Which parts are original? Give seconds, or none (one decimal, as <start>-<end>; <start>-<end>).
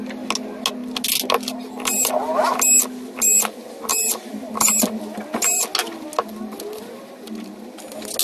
0.0-8.2